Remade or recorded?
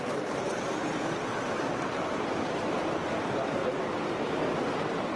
recorded